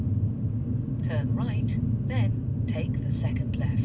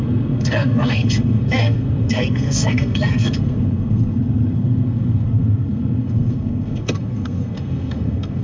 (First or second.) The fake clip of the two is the second